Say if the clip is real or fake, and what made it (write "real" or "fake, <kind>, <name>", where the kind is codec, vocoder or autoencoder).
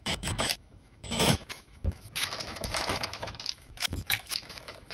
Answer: fake, autoencoder, DAC-VAE